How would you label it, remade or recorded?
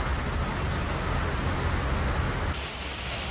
recorded